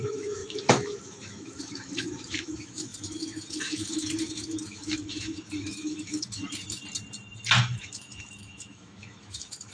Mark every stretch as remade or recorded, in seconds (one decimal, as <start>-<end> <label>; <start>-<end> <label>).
0.0-6.8 remade; 6.8-7.6 recorded; 7.6-9.7 remade